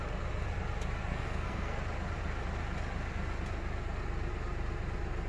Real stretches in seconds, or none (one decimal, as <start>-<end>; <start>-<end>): 0.0-1.1; 1.8-5.3